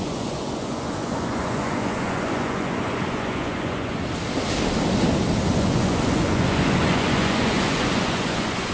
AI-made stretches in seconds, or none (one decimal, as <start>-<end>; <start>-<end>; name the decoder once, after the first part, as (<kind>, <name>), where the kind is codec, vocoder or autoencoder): 0.0-4.0 (vocoder, Vocos); 5.5-8.7